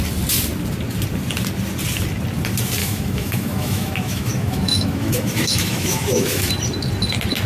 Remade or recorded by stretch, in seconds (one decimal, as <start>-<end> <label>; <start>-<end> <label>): 0.0-2.8 recorded; 2.8-6.5 remade; 6.5-7.5 recorded